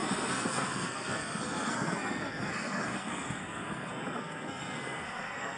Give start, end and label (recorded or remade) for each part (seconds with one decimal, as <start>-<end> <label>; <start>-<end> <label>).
0.0-5.6 remade